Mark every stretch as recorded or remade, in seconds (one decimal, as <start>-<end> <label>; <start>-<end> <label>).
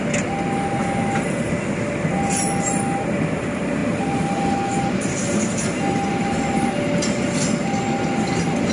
0.0-8.7 recorded